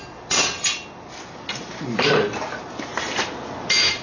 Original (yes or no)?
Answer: yes